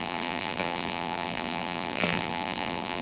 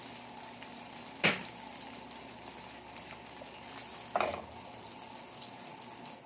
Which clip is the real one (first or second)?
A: second